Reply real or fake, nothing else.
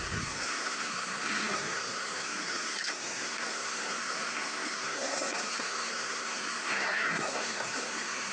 fake